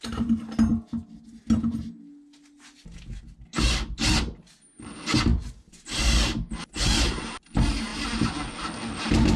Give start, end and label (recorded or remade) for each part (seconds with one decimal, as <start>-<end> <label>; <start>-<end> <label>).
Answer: 0.0-9.4 recorded